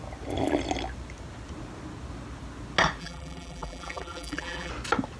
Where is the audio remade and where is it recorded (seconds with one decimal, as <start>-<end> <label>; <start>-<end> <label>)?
0.0-3.0 recorded; 3.0-4.7 remade; 4.7-5.2 recorded